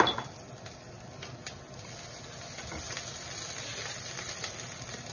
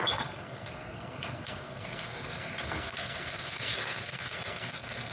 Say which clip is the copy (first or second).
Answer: second